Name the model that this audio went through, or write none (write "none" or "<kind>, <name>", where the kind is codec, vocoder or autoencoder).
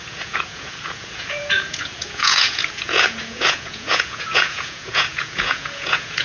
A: vocoder, Vocos